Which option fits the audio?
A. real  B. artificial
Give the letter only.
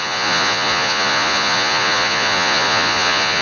B